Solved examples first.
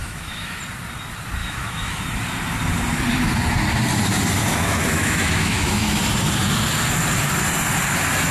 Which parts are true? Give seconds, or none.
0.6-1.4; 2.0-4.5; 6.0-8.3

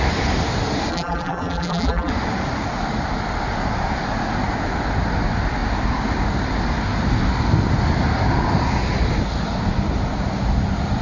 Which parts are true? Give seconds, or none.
0.0-0.9; 2.1-11.0

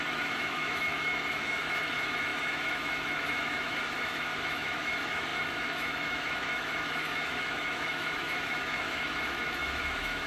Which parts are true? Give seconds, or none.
none

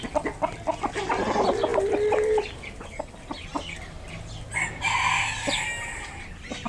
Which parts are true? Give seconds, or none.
0.0-6.7